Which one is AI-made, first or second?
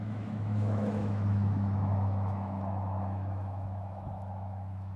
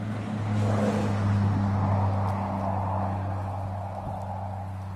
first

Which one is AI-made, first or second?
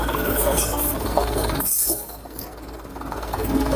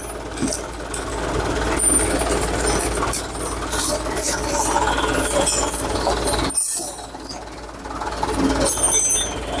first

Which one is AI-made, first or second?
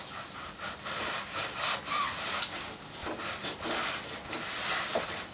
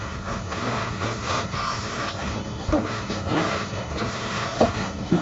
second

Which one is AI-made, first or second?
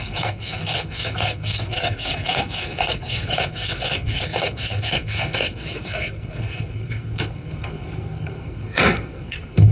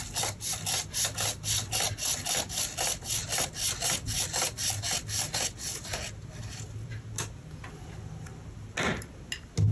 first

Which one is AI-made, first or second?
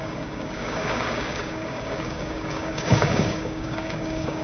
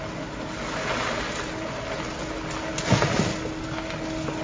first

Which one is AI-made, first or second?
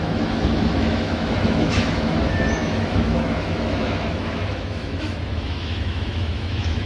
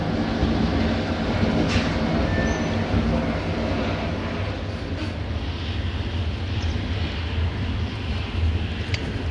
first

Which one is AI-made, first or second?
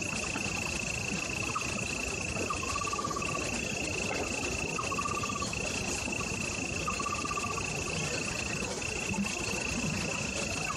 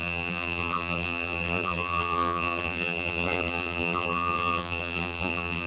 second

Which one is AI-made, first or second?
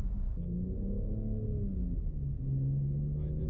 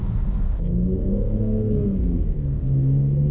second